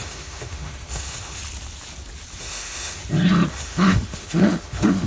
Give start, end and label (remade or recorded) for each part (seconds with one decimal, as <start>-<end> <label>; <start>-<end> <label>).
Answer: 0.0-1.4 remade; 1.4-2.4 recorded; 2.4-3.0 remade; 3.0-3.5 recorded; 3.5-5.1 remade